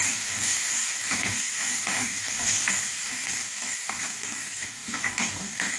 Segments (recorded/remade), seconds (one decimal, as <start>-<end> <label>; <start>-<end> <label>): 0.0-5.8 remade